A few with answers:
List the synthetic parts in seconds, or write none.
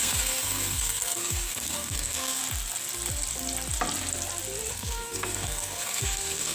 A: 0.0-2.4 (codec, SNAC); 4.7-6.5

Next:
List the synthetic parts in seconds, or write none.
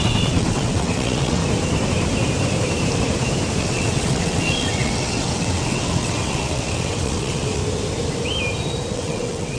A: 0.0-1.4 (vocoder, WaveNeXt); 3.6-7.6; 8.9-9.6